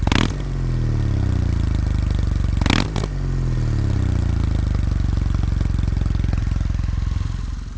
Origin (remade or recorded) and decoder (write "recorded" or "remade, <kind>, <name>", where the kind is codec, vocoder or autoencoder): recorded